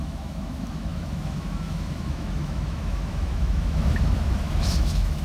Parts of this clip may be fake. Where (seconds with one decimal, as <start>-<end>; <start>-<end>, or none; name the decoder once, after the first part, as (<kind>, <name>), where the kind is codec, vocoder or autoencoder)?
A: 0.0-5.2 (autoencoder, DAC-VAE)

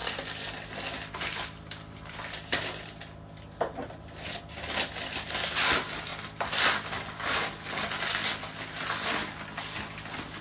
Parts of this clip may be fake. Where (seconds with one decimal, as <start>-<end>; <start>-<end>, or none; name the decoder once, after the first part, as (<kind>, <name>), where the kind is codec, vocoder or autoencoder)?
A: none

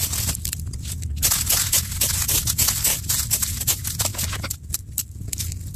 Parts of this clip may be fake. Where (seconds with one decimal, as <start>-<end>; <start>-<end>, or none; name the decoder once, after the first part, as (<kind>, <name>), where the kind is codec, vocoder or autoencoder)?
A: none

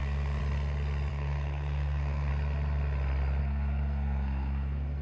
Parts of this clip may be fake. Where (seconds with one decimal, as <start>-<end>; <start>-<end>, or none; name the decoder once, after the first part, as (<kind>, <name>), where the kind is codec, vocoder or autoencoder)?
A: 0.0-0.4 (codec, SNAC); 1.1-2.3; 3.4-5.0

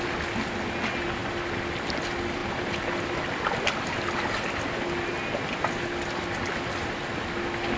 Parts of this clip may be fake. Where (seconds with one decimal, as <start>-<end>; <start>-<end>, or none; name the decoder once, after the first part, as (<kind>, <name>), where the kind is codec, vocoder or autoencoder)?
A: none

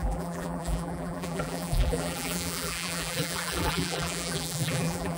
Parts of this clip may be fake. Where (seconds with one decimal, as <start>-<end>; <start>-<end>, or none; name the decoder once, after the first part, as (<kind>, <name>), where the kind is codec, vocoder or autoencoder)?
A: 0.0-5.2 (vocoder, BigVGAN v2)

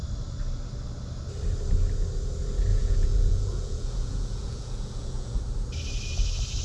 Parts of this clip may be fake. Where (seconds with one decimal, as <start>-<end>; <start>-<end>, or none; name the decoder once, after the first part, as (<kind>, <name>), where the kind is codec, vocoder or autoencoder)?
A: 2.7-5.4 (vocoder, Vocos)

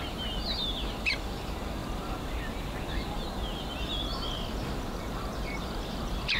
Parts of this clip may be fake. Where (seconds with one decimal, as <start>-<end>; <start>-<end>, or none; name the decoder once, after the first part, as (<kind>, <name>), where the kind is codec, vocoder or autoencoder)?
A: none